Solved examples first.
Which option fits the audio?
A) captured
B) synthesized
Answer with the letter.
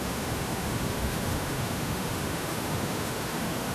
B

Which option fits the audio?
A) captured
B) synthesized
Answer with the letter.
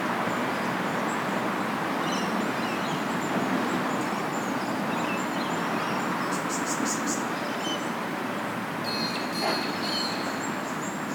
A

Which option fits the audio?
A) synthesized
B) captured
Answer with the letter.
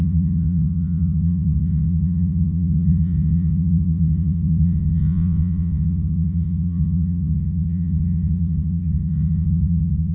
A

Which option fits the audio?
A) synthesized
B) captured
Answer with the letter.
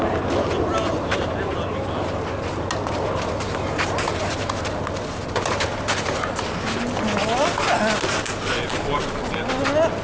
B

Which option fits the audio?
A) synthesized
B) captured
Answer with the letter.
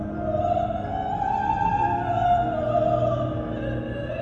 B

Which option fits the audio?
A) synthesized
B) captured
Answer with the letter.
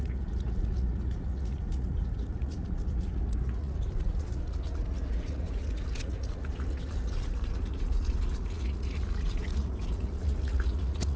A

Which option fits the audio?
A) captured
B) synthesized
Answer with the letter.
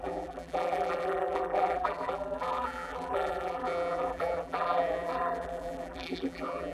B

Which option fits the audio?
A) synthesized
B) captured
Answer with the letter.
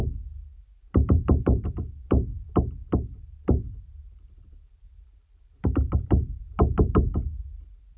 A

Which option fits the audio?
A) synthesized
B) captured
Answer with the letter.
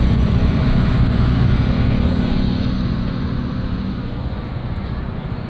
A